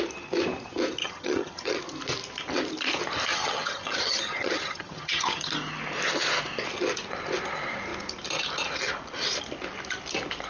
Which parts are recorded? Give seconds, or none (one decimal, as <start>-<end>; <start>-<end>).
0.0-1.0; 1.8-3.3; 5.5-10.5